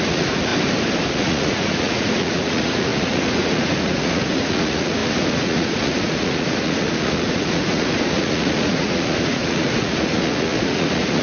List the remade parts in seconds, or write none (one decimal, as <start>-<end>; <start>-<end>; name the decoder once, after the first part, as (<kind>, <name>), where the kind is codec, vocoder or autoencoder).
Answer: 0.0-0.5 (vocoder, Vocos); 1.1-11.2